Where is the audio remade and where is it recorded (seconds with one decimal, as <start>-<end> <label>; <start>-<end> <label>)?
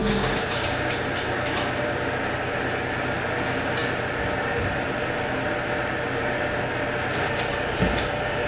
0.0-1.0 remade; 1.0-8.5 recorded